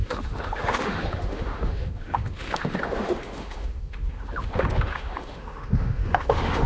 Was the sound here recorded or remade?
remade